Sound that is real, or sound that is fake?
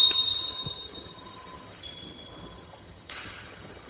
fake